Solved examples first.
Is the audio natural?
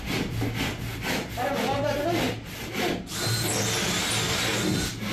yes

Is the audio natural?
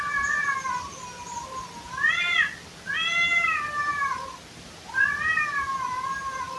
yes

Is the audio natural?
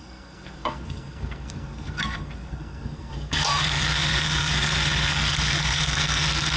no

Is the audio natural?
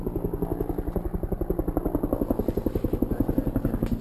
yes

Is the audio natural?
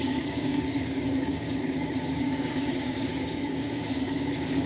no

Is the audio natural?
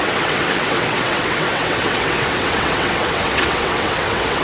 no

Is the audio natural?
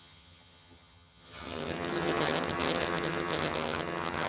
no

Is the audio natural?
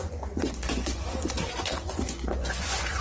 no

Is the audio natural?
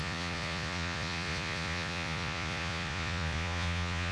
no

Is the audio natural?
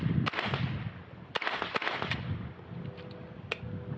yes